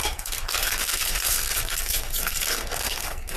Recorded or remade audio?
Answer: remade